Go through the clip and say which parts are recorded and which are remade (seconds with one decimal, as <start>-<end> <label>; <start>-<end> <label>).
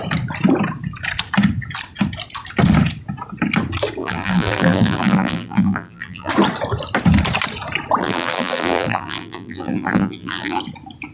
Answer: 0.0-4.0 recorded; 4.0-6.3 remade; 6.3-8.0 recorded; 8.0-10.6 remade; 10.6-11.1 recorded